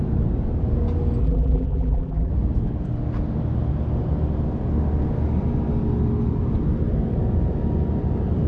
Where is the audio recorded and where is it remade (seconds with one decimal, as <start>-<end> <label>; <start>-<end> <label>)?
0.0-1.2 recorded; 1.2-2.3 remade; 2.3-8.5 recorded